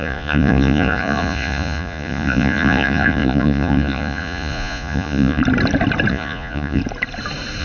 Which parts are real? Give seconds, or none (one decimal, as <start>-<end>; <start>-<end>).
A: 5.4-6.1; 6.8-7.6